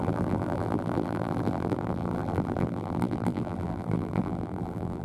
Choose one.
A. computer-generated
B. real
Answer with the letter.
A